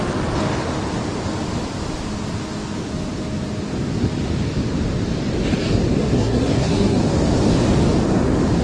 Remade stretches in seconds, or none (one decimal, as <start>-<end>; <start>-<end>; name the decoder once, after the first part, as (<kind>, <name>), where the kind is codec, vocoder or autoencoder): 6.0-7.0 (codec, SNAC)